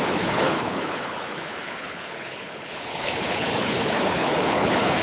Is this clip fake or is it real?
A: fake